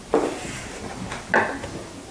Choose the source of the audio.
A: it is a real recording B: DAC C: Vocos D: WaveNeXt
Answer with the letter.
A